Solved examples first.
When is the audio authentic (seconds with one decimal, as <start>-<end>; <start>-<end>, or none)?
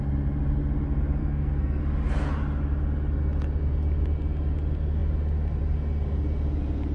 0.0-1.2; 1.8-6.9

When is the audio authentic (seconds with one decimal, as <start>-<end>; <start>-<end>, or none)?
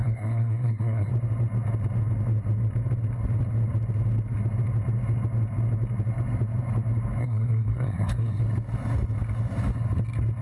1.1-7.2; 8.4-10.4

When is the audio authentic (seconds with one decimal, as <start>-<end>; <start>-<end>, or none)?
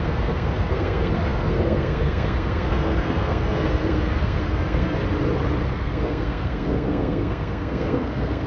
5.0-5.7